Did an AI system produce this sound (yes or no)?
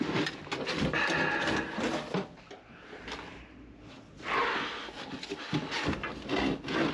no